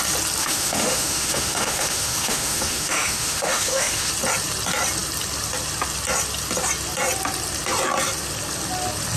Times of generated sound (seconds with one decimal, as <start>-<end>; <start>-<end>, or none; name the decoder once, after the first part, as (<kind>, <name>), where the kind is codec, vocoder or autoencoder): 0.4-4.1 (autoencoder, DAC-VAE)